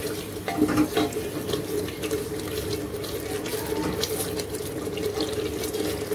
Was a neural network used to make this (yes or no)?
no